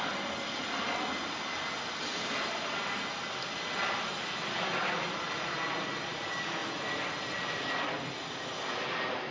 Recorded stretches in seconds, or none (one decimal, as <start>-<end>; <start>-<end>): 0.0-9.3